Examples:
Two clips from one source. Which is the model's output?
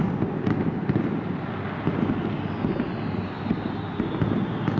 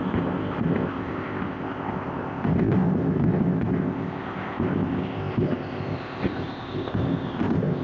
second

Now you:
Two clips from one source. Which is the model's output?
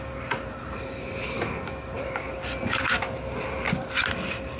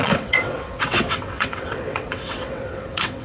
second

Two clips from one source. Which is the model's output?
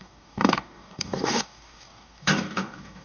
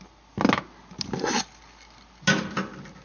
first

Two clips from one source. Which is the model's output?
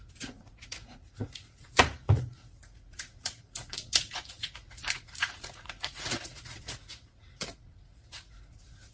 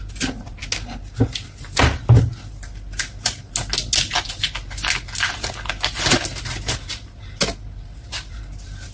first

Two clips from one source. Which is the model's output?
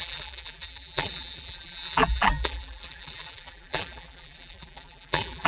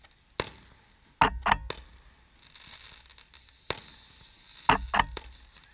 first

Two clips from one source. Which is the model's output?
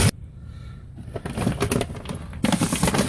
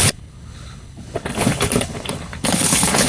second